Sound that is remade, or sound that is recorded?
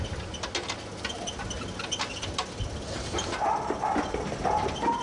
recorded